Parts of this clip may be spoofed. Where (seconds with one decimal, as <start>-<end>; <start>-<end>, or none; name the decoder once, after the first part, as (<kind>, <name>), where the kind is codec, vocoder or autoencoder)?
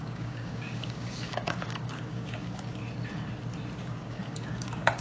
0.0-2.8 (codec, DAC); 3.8-5.0